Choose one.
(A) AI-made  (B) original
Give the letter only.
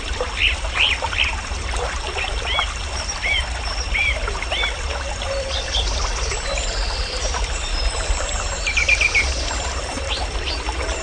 A